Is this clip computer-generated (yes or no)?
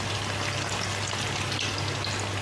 no